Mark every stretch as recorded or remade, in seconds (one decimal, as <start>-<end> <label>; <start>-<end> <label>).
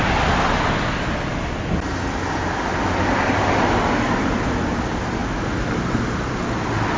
0.0-7.0 recorded